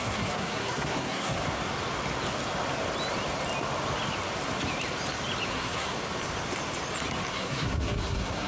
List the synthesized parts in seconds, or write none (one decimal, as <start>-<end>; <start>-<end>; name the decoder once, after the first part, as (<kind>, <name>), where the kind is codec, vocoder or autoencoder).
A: 0.0-1.4 (codec, SNAC); 5.5-5.9; 7.3-8.5